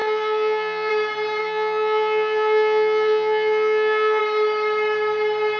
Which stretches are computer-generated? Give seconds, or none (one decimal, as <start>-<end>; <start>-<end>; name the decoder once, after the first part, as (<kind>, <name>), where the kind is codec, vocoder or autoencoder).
0.0-0.9 (vocoder, HiFi-GAN); 1.4-4.2

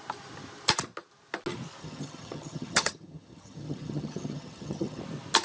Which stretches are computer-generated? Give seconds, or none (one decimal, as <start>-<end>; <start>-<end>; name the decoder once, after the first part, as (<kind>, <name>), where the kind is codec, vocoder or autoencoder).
1.8-5.0 (vocoder, HiFi-GAN)

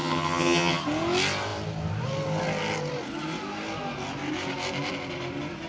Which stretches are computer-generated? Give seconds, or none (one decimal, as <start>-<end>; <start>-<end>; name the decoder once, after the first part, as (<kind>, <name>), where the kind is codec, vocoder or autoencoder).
0.0-0.8 (vocoder, HiFi-GAN)

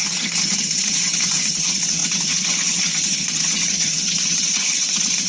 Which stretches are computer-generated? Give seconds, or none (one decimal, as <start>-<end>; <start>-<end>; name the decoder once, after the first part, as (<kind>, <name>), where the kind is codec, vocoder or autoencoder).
0.0-5.3 (vocoder, HiFi-GAN)

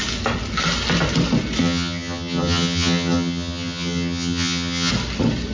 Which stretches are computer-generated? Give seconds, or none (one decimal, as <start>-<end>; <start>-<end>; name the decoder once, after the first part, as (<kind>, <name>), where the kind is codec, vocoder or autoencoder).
1.6-4.9 (vocoder, HiFi-GAN)

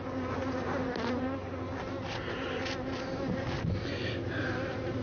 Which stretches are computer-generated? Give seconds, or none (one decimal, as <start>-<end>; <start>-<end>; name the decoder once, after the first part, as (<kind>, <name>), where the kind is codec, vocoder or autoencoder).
none

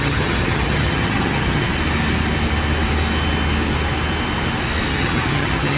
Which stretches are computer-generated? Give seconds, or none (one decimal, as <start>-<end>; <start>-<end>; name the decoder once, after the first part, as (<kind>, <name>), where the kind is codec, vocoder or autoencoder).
0.0-1.7 (vocoder, HiFi-GAN); 4.9-5.8

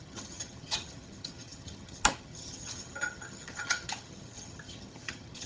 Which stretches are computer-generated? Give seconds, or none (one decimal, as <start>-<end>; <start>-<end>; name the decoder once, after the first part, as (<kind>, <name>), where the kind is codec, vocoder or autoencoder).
0.0-5.5 (vocoder, HiFi-GAN)